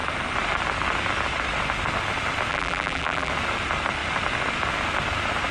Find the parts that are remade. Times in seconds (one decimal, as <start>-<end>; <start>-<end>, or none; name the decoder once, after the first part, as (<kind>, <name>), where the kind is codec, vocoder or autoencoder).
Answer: 2.5-3.3 (vocoder, BigVGAN v2)